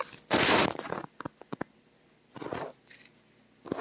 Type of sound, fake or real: real